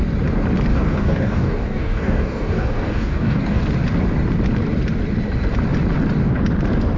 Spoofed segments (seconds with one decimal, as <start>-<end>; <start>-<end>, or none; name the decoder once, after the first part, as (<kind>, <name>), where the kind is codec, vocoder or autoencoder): 0.7-3.6 (codec, DAC)